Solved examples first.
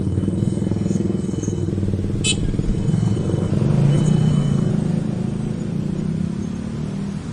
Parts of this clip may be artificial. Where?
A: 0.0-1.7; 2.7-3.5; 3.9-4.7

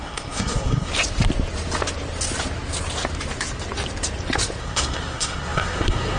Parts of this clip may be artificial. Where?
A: 0.0-0.9; 4.6-6.2

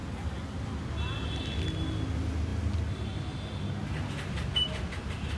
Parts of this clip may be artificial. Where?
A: none

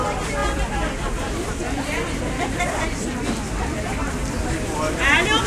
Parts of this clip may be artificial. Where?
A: 0.4-3.1; 4.2-4.9

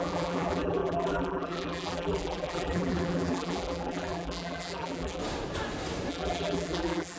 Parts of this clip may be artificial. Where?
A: 0.0-5.2; 6.1-7.2

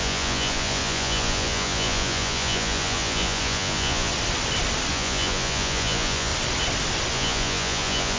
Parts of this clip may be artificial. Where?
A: 0.0-4.1; 4.9-6.3; 7.1-8.2

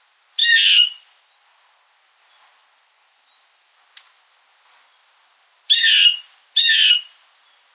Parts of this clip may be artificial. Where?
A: none

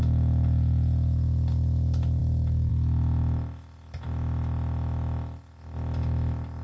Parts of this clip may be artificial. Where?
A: none